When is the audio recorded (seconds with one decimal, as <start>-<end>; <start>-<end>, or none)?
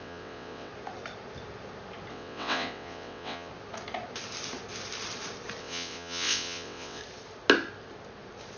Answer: 0.7-2.1; 3.5-5.6; 7.0-8.6